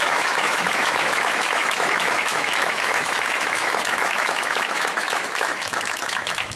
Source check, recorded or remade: remade